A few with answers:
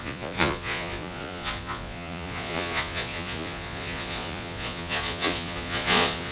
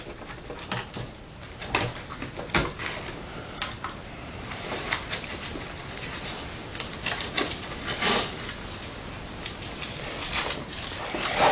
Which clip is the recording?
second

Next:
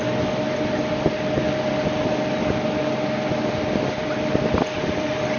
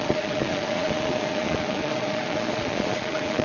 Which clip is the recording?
first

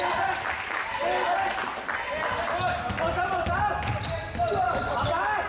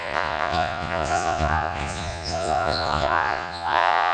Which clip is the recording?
first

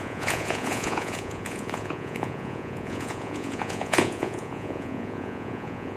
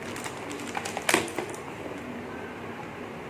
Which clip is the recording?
second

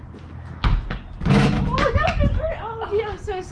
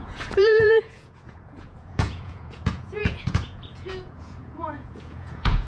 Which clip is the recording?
first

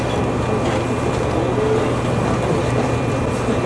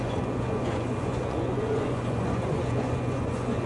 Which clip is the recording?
first